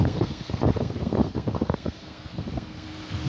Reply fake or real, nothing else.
fake